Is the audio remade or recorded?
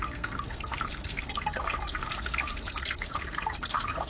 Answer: remade